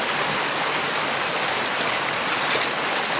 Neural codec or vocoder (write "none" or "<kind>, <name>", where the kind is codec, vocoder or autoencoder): none